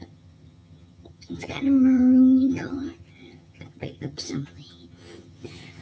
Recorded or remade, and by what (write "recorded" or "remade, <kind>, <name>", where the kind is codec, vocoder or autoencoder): remade, vocoder, HiFi-GAN